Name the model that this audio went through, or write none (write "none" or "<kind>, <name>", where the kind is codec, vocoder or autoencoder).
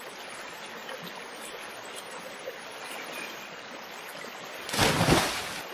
none